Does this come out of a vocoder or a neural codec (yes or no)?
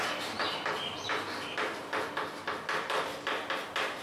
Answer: no